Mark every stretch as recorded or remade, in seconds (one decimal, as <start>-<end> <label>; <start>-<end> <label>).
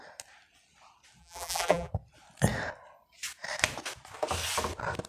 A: 0.0-1.2 recorded; 1.2-1.9 remade; 1.9-5.1 recorded